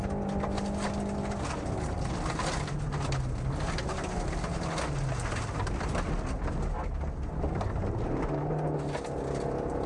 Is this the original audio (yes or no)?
yes